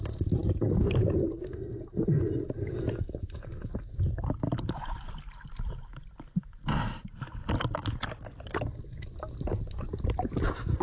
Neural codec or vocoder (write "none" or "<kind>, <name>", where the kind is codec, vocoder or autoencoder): none